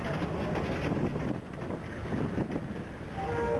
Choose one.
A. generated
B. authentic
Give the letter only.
B